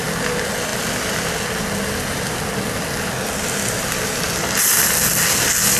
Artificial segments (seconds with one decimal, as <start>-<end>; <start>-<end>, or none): none